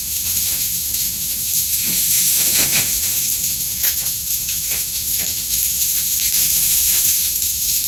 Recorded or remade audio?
remade